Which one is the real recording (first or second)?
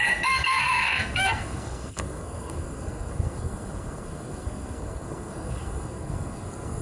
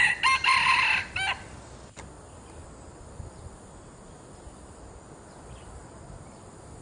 second